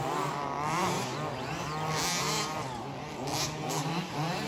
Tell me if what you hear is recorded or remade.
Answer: recorded